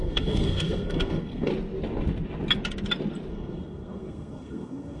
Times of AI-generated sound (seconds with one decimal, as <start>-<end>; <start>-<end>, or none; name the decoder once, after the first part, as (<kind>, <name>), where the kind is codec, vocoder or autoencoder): 0.0-1.5 (codec, SNAC); 3.3-5.0